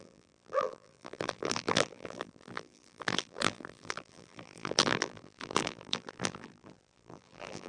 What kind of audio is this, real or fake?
fake